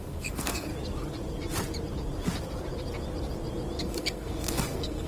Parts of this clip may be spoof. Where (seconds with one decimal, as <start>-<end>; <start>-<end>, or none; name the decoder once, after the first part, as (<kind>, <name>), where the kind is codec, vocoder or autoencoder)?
0.0-0.7 (codec, SNAC); 3.8-5.1